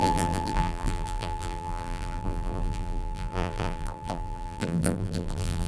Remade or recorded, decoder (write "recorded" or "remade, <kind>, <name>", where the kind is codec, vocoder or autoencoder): remade, vocoder, BigVGAN v2